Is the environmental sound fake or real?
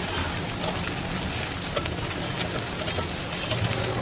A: real